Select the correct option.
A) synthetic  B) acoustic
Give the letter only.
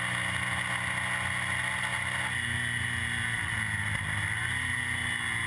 B